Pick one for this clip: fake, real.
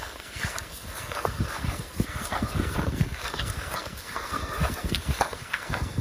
fake